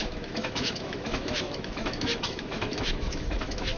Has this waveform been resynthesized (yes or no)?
yes